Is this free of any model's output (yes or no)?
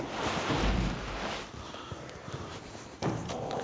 no